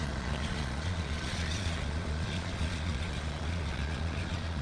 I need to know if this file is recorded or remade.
remade